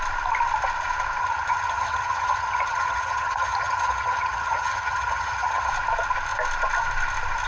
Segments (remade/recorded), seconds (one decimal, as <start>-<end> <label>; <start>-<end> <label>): 0.0-1.2 recorded; 1.2-5.7 remade; 5.7-7.5 recorded